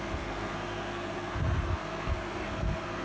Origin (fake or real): fake